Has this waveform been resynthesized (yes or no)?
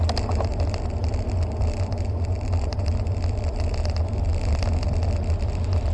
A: no